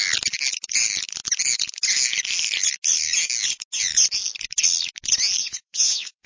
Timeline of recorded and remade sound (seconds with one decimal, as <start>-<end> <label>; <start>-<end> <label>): 0.0-5.4 recorded; 5.4-6.3 remade